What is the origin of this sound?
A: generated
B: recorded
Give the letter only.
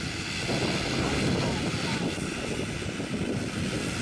B